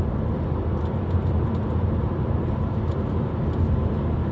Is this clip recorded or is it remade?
recorded